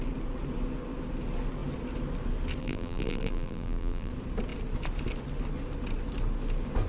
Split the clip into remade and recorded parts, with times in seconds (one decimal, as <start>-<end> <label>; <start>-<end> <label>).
0.0-2.6 recorded; 2.6-4.1 remade; 4.1-6.9 recorded